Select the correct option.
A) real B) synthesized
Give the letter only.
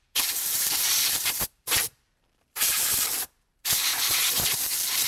B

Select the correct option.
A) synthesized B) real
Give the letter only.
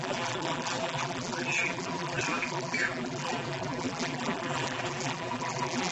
A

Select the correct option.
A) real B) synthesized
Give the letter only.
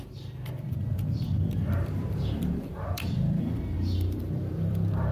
B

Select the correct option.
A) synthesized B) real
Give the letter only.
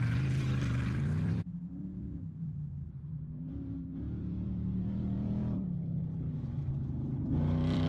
A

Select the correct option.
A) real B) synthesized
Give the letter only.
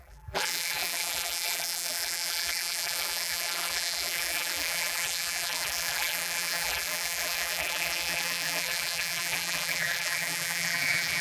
B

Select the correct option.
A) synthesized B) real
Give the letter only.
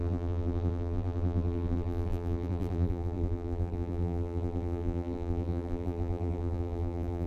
A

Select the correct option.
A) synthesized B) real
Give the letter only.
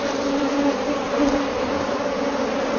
B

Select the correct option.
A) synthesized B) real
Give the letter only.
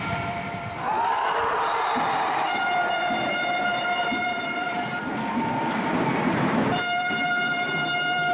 A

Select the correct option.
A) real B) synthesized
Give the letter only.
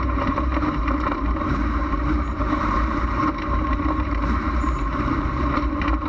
B